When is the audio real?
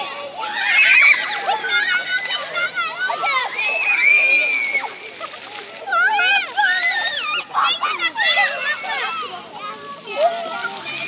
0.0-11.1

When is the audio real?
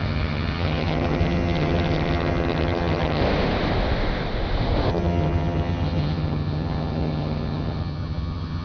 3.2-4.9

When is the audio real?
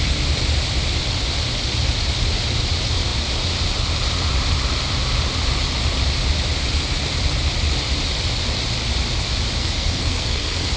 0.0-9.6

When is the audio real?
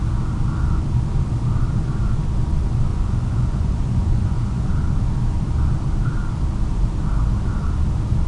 0.0-2.9; 4.7-8.3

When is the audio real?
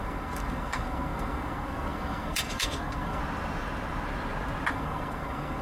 3.2-4.7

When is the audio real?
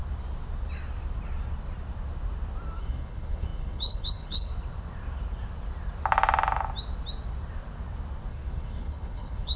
0.0-2.8; 4.5-8.3